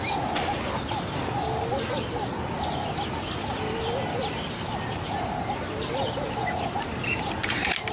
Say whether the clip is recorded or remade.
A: recorded